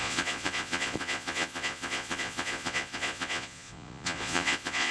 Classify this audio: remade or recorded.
remade